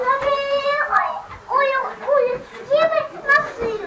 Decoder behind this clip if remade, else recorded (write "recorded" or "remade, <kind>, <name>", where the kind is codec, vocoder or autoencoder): recorded